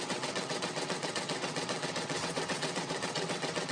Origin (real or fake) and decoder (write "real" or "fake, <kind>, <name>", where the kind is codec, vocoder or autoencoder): fake, vocoder, WaveNeXt